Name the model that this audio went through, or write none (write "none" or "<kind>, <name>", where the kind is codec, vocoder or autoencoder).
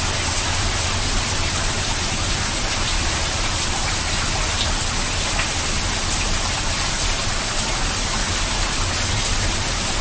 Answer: none